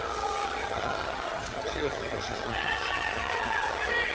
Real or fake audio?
fake